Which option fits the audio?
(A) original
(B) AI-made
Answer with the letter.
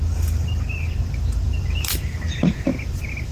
B